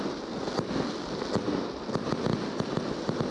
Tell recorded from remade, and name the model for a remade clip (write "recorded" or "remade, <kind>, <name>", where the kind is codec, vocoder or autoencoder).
recorded